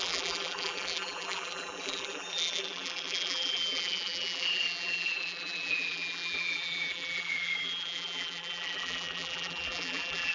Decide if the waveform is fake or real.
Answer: fake